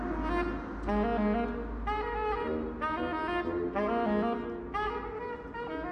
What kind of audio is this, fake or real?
real